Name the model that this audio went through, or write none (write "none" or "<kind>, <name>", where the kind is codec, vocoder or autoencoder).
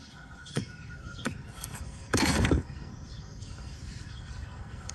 codec, SNAC